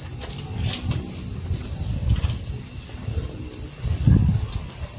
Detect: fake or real real